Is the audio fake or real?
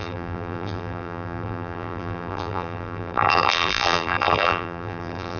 fake